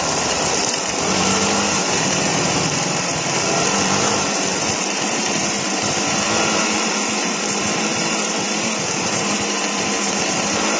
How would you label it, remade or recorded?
remade